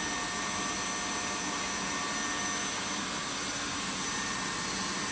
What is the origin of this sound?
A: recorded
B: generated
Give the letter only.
A